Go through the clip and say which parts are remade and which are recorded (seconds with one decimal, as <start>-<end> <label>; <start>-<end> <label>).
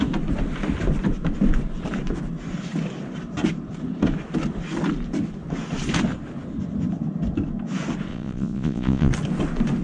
0.0-8.1 recorded; 8.1-9.1 remade; 9.1-9.8 recorded